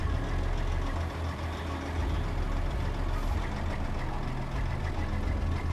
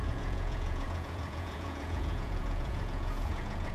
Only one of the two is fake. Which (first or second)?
second